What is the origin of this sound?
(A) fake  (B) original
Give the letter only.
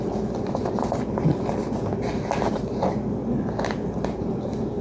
B